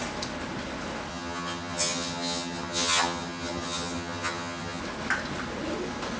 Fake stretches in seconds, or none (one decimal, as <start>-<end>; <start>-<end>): 1.1-4.8